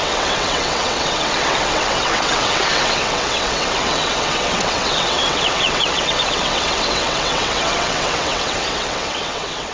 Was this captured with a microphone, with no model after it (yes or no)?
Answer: no